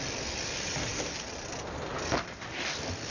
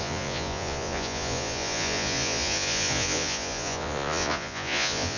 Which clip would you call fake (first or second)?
second